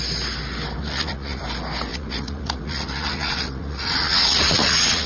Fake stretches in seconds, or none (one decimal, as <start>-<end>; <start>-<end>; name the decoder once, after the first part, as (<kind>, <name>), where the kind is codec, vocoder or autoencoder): 0.8-1.4 (vocoder, Vocos); 1.9-5.1